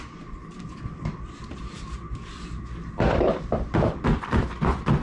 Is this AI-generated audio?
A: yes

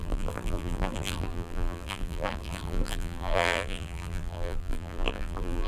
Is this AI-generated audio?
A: yes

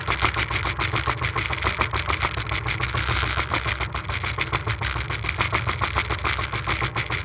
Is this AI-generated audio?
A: no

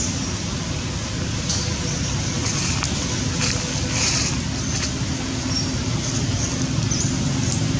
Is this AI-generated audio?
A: no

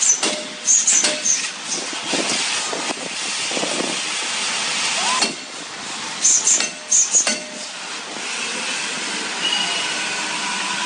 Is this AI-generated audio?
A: no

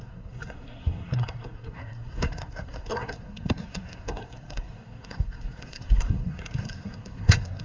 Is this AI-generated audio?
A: yes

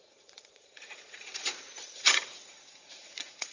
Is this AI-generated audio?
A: yes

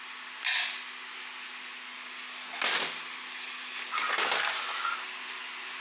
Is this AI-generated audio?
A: no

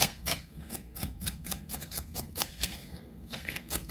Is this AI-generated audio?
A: yes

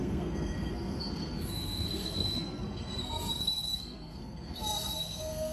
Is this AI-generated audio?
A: yes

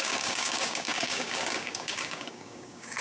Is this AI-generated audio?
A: yes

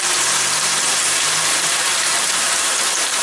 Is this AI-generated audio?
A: yes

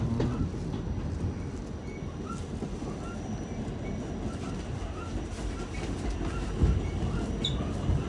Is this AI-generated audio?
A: no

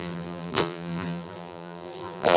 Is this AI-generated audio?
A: yes